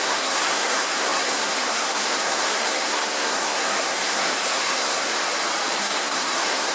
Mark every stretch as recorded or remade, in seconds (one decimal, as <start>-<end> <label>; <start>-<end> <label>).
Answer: 0.0-5.1 remade; 5.1-5.8 recorded; 5.8-6.7 remade